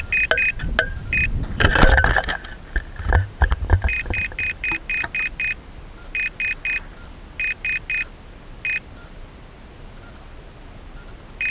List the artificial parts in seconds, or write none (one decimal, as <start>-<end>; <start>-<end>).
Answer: none

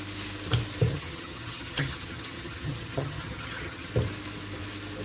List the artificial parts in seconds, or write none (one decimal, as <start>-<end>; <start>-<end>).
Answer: 0.9-3.9